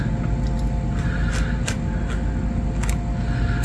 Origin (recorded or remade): recorded